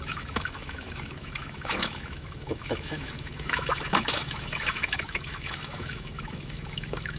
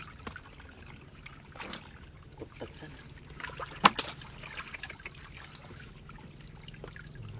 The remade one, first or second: first